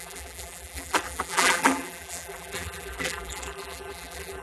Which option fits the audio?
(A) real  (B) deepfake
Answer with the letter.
B